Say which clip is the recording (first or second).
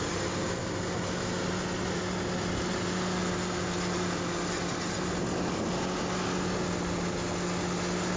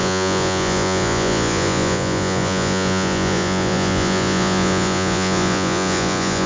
first